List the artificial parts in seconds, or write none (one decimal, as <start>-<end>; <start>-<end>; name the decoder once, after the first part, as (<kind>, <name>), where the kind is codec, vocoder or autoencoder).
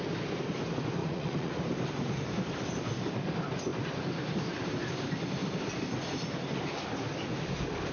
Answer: 1.0-1.6 (vocoder, Vocos)